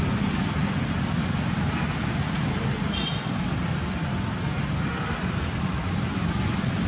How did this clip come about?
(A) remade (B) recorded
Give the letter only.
B